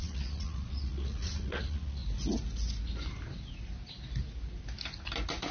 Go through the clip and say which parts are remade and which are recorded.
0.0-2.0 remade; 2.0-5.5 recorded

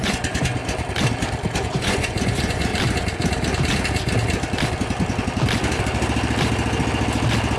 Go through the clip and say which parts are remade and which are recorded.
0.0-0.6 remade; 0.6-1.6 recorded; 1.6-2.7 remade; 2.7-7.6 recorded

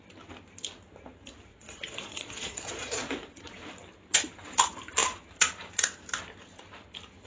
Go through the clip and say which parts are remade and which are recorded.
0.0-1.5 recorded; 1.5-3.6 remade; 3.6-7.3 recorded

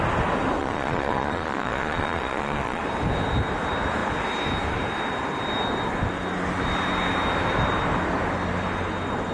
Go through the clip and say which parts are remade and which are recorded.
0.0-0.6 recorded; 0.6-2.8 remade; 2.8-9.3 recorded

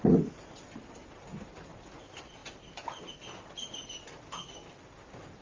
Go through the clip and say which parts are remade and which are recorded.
0.0-5.4 recorded

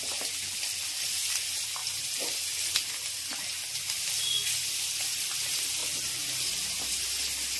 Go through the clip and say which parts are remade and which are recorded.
0.0-7.6 recorded

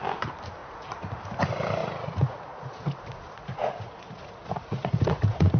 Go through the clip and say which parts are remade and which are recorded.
0.0-0.6 recorded; 0.6-1.2 remade; 1.2-1.8 recorded; 1.8-5.6 remade